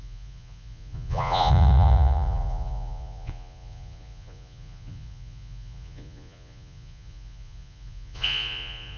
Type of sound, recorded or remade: remade